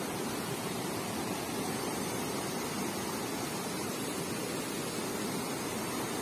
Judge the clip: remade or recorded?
recorded